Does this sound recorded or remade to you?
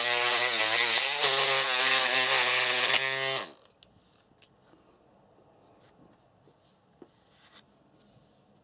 recorded